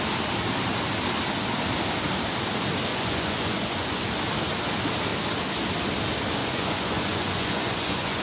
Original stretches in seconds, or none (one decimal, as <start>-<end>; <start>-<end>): 0.0-2.9; 4.0-6.4